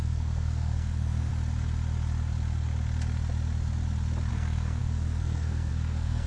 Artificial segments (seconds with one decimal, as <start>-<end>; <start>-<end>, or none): 0.0-1.3; 4.3-6.3